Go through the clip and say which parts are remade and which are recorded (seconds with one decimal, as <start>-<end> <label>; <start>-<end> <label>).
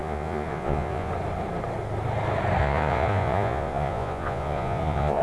0.0-1.1 remade; 1.1-2.6 recorded; 2.6-5.2 remade